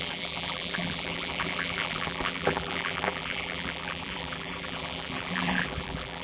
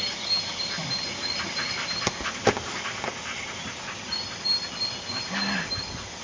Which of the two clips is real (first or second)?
second